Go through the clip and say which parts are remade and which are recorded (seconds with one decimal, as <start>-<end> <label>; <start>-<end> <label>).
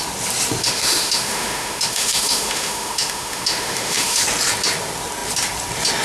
0.0-0.6 recorded; 0.6-4.2 remade; 4.2-6.0 recorded